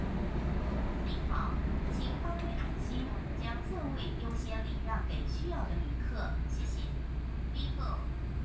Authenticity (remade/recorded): recorded